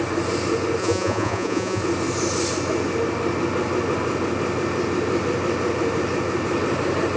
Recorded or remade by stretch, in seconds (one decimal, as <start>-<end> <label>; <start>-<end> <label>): 0.0-0.8 recorded; 0.8-1.8 remade; 1.8-7.2 recorded